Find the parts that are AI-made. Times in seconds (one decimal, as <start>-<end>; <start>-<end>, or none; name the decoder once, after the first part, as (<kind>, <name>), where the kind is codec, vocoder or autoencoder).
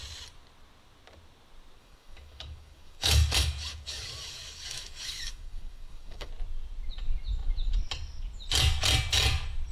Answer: 1.8-6.3 (codec, DAC)